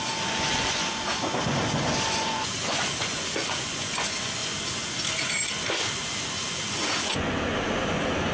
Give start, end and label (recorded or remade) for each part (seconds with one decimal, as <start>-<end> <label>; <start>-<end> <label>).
0.0-8.3 remade